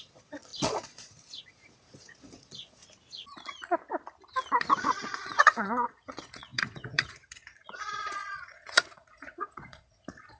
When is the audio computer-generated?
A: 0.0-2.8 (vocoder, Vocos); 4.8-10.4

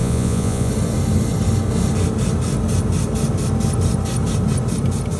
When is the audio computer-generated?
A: 0.0-0.7 (vocoder, Vocos)

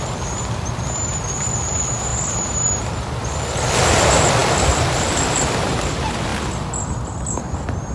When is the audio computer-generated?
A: none

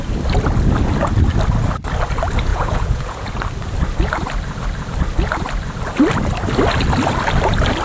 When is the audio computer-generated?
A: 2.5-3.3 (vocoder, Vocos)

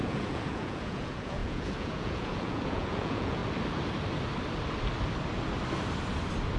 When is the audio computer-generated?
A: 0.0-3.4 (vocoder, Vocos)

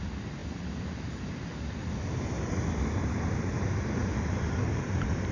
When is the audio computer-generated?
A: none

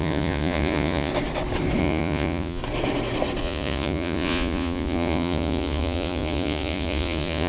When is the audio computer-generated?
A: 0.0-1.1 (vocoder, Vocos); 1.8-2.6; 3.4-7.5